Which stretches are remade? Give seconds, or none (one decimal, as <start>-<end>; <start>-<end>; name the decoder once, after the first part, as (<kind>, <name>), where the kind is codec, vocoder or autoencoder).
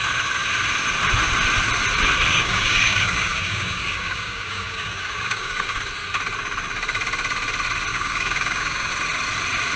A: 2.3-5.8 (codec, DAC); 7.9-8.9